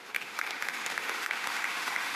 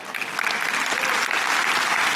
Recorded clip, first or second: second